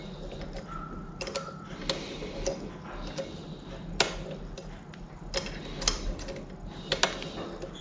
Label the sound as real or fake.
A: real